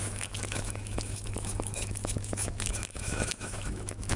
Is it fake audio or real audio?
fake